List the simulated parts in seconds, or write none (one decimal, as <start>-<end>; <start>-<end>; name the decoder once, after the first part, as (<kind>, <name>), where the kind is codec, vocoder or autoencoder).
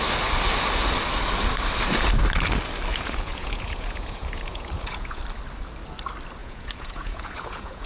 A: 2.9-5.2 (vocoder, Vocos); 6.4-7.9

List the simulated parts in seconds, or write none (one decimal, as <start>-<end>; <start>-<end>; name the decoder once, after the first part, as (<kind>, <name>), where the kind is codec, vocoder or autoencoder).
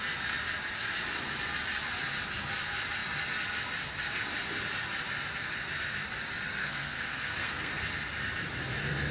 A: 6.6-7.7 (codec, SNAC)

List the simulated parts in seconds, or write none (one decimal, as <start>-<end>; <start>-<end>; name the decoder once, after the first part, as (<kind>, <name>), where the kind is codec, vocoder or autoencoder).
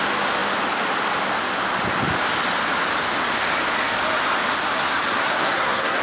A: 5.2-6.0 (codec, SNAC)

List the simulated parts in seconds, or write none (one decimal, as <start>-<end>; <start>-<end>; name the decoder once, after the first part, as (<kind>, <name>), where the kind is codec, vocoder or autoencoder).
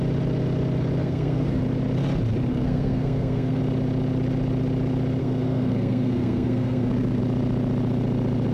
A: 1.0-1.6 (codec, SNAC); 2.5-3.6; 5.2-7.2